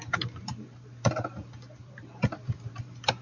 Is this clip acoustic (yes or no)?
no